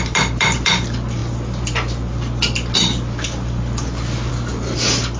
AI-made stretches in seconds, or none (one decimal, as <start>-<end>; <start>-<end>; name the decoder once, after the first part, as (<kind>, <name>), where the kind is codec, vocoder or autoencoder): none